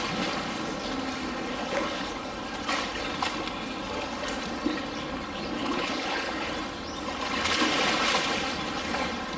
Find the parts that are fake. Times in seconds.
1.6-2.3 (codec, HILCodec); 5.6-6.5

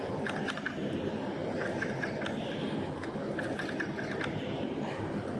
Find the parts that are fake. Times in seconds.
none

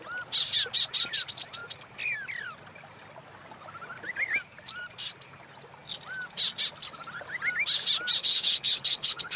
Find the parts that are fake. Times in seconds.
8.2-9.4 (codec, HILCodec)

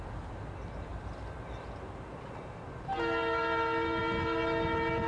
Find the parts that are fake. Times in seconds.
none

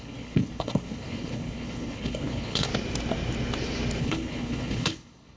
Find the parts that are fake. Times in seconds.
0.0-2.7 (codec, HILCodec); 4.0-5.4

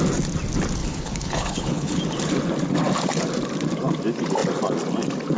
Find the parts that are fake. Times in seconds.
0.8-2.0 (codec, HILCodec)

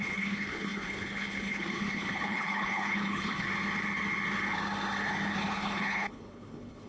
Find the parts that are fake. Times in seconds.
0.0-3.5 (codec, HILCodec); 5.5-6.9

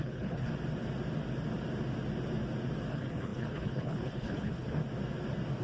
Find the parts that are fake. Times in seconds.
0.0-0.5 (codec, HILCodec); 2.9-4.8